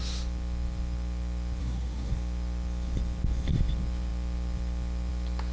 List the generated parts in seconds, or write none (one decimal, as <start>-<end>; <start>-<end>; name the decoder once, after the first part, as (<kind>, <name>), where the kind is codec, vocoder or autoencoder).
1.6-2.1 (codec, SNAC)